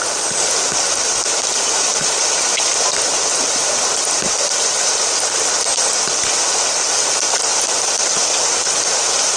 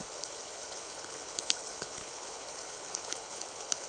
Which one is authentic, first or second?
first